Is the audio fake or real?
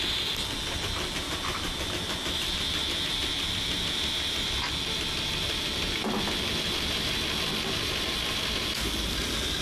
real